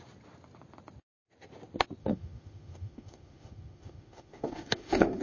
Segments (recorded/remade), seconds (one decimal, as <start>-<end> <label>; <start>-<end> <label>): 0.0-2.0 recorded; 2.0-5.2 remade